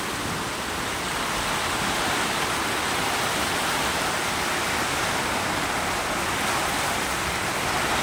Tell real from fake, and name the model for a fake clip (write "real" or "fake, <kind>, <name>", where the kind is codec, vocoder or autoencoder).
real